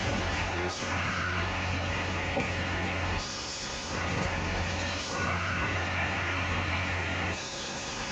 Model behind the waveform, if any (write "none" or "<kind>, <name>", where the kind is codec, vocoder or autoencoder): codec, SNAC